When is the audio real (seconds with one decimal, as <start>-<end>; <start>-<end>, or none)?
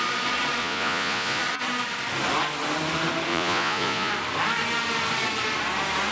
0.0-0.6; 1.4-3.3; 4.1-6.1